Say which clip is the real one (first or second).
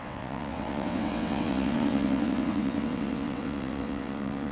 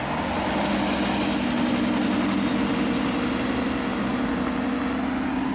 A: second